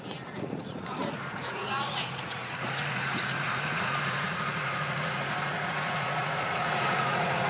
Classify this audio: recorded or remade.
remade